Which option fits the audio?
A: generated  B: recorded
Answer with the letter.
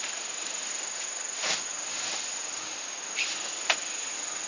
B